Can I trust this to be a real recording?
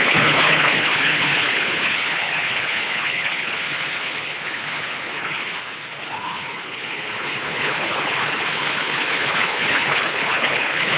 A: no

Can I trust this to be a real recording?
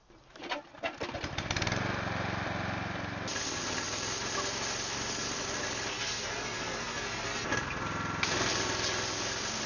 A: yes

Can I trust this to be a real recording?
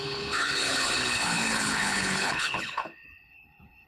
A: no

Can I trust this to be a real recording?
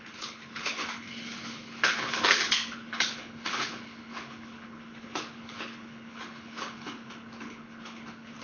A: no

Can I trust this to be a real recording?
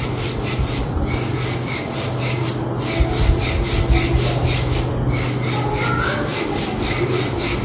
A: yes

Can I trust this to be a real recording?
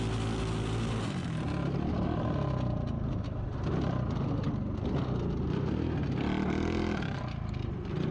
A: yes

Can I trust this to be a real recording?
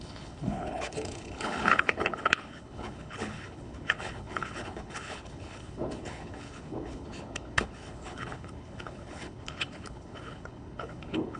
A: no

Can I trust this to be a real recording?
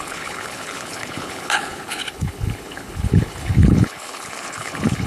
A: no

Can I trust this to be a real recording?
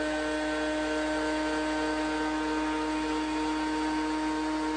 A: yes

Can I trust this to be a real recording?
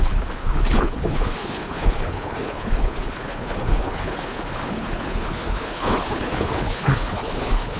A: no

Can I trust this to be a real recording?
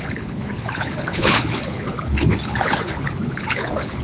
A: no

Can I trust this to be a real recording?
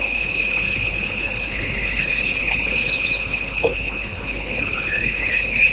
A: no